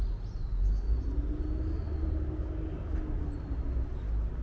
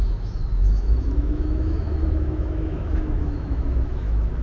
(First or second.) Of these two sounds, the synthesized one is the second